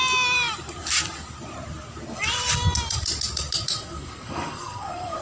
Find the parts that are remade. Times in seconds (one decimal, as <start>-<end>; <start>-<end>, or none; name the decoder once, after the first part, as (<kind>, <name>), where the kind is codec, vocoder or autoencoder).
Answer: 3.7-5.2 (codec, SNAC)